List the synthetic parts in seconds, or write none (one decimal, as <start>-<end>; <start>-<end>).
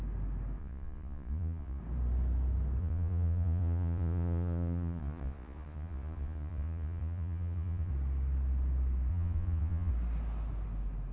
0.6-1.8; 2.8-7.9; 9.1-9.9